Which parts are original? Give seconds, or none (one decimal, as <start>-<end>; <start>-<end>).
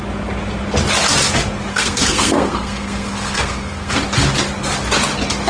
0.0-1.7; 4.0-5.5